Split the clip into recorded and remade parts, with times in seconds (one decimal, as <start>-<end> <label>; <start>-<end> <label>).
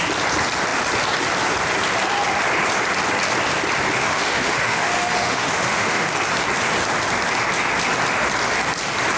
0.0-4.0 recorded; 4.0-6.1 remade; 6.1-9.2 recorded